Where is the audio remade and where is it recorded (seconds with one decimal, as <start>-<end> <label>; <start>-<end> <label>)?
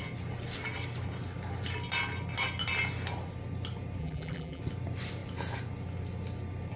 0.0-4.0 recorded; 4.0-4.6 remade; 4.6-6.8 recorded